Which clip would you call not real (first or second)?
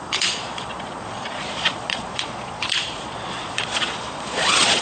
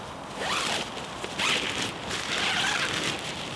first